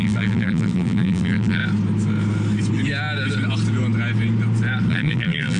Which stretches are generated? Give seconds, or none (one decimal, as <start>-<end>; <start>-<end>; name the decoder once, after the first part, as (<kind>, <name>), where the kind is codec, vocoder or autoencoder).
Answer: 0.0-1.6 (vocoder, BigVGAN v2); 4.9-5.6